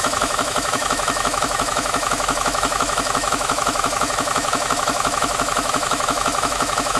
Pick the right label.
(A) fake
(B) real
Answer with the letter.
A